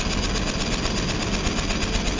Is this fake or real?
real